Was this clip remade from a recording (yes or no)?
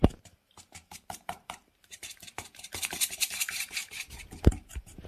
yes